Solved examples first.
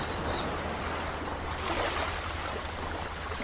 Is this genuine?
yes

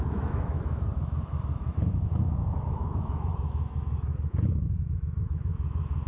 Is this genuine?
no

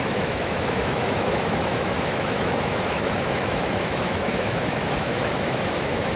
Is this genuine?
no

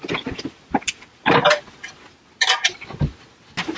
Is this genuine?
yes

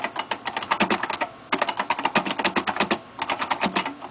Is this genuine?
yes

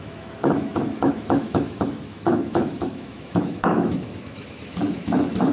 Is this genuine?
no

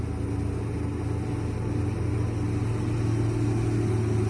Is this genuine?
yes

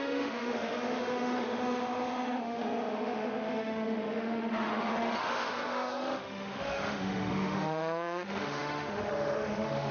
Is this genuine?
no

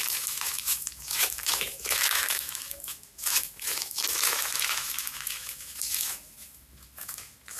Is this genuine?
no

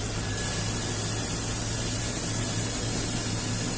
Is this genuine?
yes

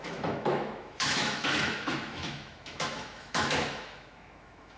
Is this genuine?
no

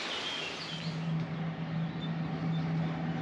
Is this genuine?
yes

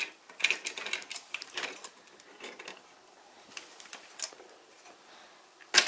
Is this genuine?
yes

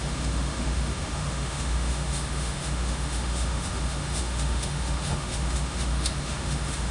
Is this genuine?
no